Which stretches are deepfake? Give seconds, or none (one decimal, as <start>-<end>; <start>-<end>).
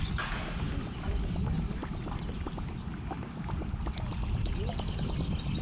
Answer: none